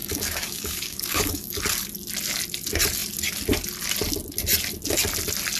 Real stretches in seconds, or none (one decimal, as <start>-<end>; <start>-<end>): 1.6-5.6

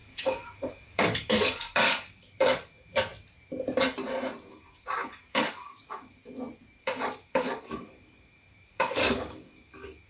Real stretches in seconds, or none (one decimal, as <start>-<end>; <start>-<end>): 3.1-4.5; 6.2-6.8

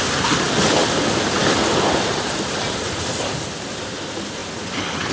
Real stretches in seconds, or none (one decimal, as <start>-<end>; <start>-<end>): 0.0-5.1